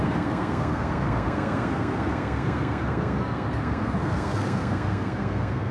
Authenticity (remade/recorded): remade